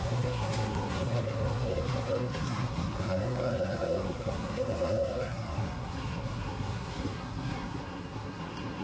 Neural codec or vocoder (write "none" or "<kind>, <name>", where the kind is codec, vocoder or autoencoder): codec, SNAC